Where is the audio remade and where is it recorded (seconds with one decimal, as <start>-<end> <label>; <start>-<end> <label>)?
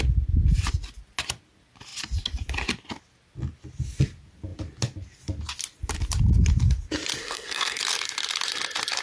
0.0-7.2 recorded; 7.2-7.8 remade; 7.8-9.0 recorded